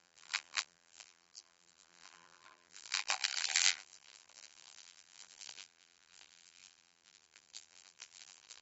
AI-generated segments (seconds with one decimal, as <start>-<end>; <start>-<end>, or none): 0.0-8.6